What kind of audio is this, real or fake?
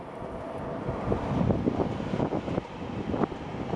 fake